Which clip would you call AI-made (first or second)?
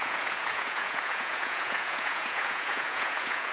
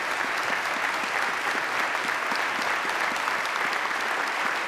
first